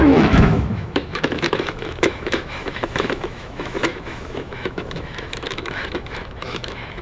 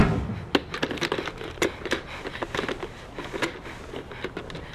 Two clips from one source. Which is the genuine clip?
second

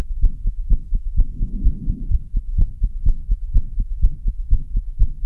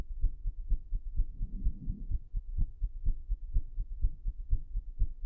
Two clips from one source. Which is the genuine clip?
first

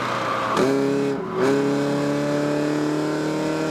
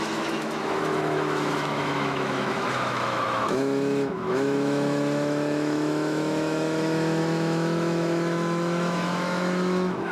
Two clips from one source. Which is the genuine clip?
first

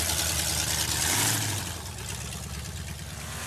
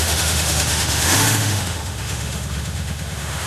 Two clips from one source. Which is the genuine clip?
first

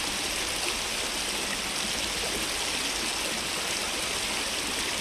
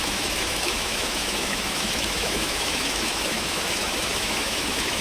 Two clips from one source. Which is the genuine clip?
first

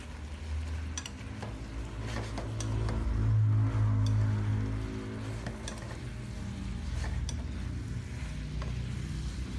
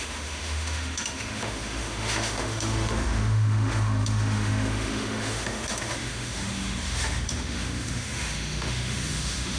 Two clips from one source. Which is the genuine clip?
first